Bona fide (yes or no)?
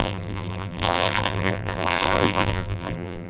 no